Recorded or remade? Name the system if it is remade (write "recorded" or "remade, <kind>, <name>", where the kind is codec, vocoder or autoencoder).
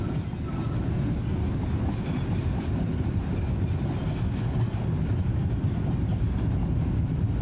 recorded